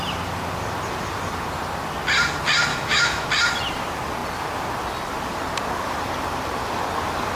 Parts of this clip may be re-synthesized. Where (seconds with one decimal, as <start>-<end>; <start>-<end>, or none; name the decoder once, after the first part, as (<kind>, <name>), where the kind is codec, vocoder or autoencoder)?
2.7-3.3 (autoencoder, DAC-VAE)